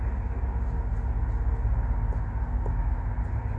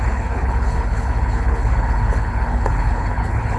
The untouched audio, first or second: first